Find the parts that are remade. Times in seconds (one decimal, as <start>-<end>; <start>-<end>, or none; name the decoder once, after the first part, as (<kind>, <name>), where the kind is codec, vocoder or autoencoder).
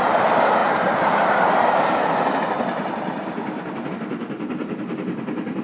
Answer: none